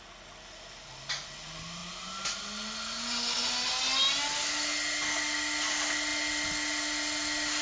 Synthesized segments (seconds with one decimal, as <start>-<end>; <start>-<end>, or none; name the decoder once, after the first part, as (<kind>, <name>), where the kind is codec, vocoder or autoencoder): none